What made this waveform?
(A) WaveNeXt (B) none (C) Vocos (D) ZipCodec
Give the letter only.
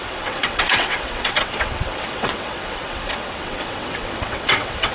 A